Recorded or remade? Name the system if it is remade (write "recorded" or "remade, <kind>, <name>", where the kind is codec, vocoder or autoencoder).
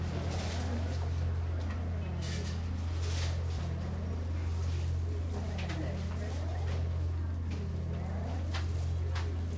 recorded